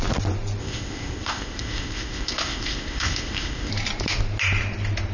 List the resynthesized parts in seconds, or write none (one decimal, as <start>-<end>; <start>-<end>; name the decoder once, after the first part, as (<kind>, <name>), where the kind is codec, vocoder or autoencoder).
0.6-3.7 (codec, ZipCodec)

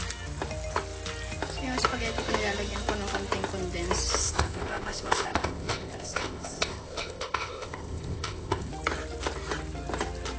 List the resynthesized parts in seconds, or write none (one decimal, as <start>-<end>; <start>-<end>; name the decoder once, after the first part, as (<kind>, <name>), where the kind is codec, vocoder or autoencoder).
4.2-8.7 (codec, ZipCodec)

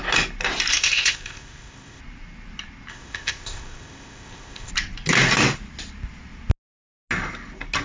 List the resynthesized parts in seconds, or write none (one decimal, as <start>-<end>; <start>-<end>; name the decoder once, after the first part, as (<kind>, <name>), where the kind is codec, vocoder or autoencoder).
0.7-2.0 (codec, ZipCodec); 2.9-4.7

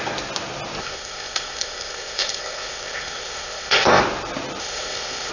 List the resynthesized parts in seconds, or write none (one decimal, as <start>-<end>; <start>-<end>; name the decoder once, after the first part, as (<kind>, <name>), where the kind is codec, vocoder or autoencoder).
0.8-4.0 (codec, ZipCodec); 4.6-5.3

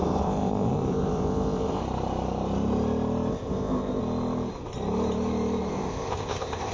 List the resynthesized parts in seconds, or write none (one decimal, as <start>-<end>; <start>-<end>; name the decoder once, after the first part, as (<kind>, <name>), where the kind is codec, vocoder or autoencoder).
0.0-1.8 (codec, ZipCodec); 3.3-4.0; 5.7-6.7